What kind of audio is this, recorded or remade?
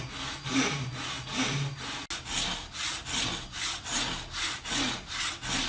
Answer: recorded